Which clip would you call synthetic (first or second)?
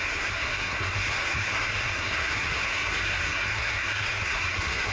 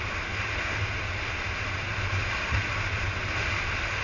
first